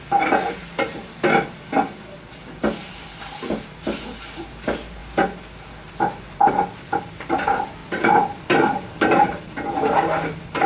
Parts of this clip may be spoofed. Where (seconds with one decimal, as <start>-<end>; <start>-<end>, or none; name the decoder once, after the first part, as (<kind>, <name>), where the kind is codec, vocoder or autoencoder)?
0.0-5.0 (vocoder, BigVGAN v2); 6.8-7.8; 9.4-10.7